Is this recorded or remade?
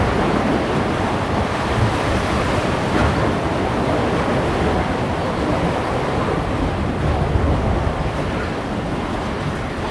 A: remade